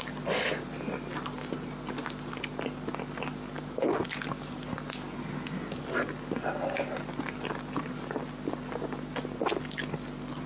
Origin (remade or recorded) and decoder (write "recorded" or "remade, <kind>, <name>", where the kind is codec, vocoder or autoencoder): recorded